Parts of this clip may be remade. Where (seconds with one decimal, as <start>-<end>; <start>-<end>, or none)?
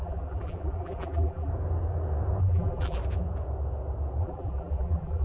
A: 0.0-1.5; 2.4-3.0; 4.2-5.2